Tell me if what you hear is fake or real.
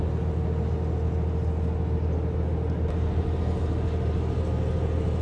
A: real